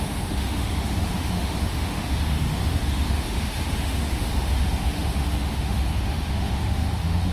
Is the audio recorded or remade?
remade